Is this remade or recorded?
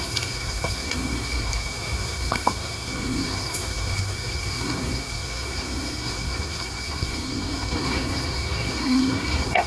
remade